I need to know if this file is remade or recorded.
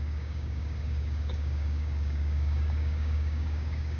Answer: remade